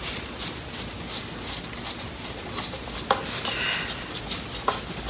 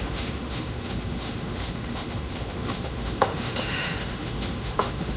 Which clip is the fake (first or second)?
second